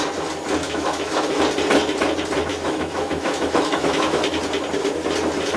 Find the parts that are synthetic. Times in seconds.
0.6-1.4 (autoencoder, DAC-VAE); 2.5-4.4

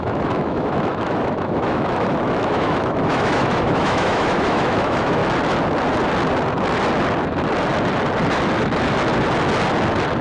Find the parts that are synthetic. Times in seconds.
0.0-5.2 (autoencoder, DAC-VAE)

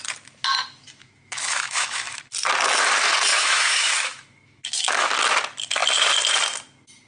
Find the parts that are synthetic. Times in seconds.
1.0-2.2 (autoencoder, DAC-VAE); 3.3-5.1

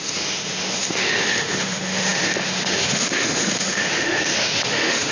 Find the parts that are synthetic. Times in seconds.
0.0-5.1 (autoencoder, DAC-VAE)

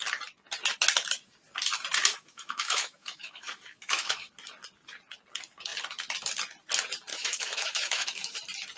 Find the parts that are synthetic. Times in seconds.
2.1-4.3 (autoencoder, DAC-VAE); 7.1-8.4